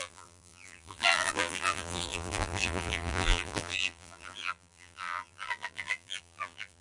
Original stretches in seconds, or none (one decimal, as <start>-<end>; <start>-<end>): none